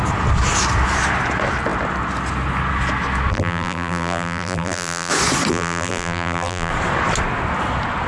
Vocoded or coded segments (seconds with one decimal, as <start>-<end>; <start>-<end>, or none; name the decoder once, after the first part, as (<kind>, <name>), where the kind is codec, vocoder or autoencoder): 3.3-5.1 (vocoder, BigVGAN v2); 5.5-6.7

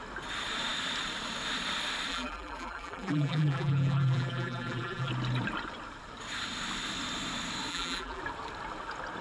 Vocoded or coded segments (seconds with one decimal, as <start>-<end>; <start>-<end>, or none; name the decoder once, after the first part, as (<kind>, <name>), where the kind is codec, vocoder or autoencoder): 2.1-5.1 (vocoder, BigVGAN v2); 7.7-8.2